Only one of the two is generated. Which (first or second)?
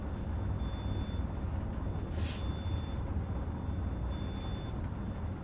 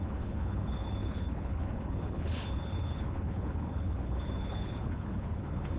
second